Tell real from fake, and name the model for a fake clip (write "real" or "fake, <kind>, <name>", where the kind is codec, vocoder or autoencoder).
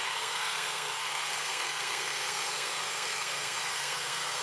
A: fake, codec, SNAC